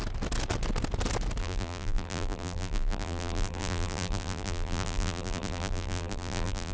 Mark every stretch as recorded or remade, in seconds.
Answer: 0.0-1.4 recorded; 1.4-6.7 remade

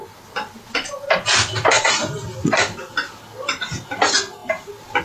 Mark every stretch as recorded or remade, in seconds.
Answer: 0.0-2.6 remade; 2.6-5.0 recorded

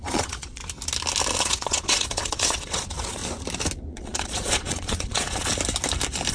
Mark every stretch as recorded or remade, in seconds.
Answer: 0.0-0.6 remade; 0.6-1.4 recorded; 1.4-3.2 remade; 3.2-3.9 recorded; 3.9-5.5 remade; 5.5-6.3 recorded

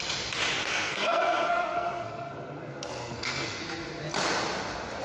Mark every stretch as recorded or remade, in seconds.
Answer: 0.0-0.6 recorded; 0.6-3.6 remade; 3.6-5.0 recorded

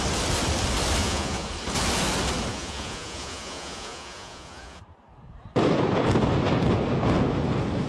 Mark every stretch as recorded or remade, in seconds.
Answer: 0.0-1.0 recorded; 1.0-1.5 remade; 1.5-2.5 recorded; 2.5-4.8 remade; 4.8-7.9 recorded